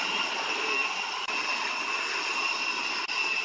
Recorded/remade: recorded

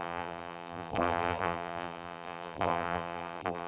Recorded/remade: remade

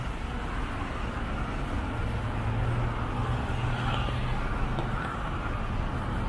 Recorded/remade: recorded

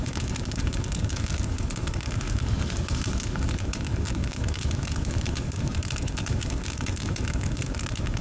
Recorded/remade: remade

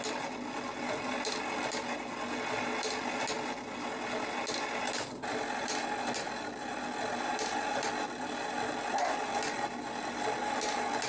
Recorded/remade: recorded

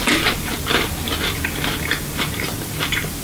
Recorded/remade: recorded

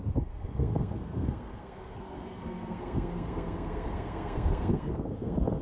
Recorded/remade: remade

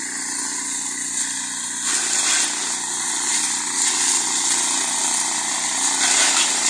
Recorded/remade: recorded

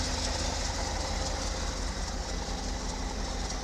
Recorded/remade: recorded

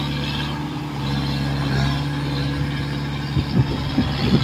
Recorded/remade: recorded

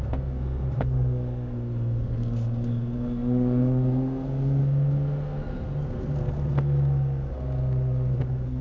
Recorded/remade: remade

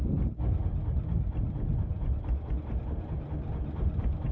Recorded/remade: recorded